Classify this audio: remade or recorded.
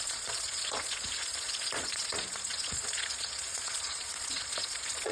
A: remade